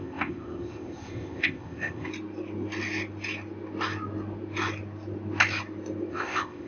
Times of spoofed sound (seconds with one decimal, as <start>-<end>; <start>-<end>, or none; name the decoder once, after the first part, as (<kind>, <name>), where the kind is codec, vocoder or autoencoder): 0.0-2.1 (codec, ZipCodec); 6.1-6.7